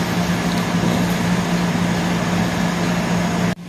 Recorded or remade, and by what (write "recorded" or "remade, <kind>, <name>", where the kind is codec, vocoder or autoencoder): recorded